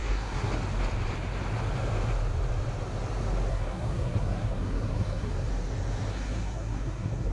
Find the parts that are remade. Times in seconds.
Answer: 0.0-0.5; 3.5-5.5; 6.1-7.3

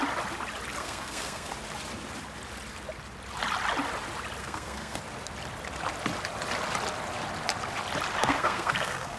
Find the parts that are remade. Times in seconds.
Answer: 0.8-1.5; 4.4-5.0; 8.2-9.2

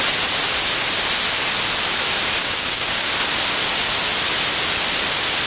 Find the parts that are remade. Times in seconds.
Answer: 2.4-3.1

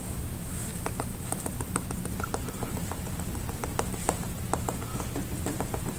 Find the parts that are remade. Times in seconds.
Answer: 0.0-4.9

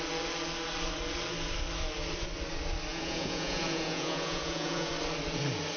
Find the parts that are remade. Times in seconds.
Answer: 2.9-4.9